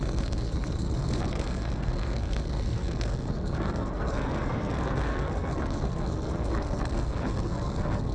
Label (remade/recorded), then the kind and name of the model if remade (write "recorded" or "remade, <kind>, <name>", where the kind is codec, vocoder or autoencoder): remade, codec, SNAC